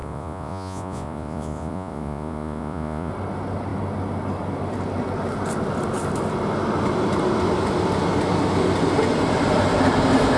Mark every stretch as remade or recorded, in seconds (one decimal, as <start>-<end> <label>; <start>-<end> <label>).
0.0-3.1 remade; 3.1-10.4 recorded